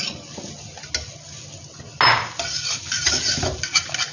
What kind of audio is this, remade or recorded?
recorded